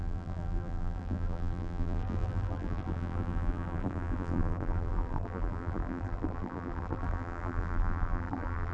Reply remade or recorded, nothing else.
remade